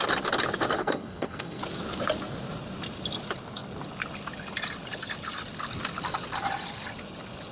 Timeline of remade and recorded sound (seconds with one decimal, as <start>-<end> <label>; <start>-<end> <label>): 0.0-0.8 recorded; 0.8-1.6 remade; 1.6-7.5 recorded